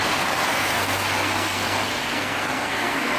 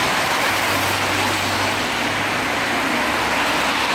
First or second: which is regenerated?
first